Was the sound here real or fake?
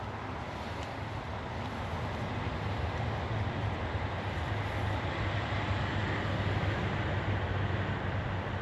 real